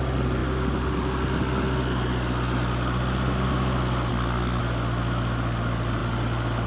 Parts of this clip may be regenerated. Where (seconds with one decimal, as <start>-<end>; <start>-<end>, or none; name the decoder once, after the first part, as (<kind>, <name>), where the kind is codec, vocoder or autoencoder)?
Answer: 4.1-4.6 (codec, SNAC)